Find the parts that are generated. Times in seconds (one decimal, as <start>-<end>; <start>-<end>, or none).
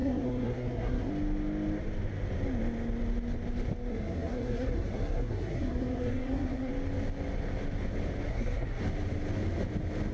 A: 0.0-1.1; 3.9-6.7; 8.3-8.8